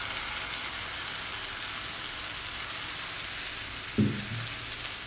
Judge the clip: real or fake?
real